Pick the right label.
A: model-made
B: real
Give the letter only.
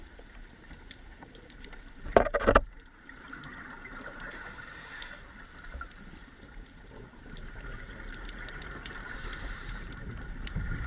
A